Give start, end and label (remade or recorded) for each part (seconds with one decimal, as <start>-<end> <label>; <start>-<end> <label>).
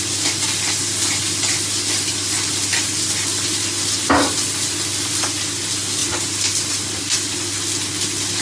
0.0-8.4 recorded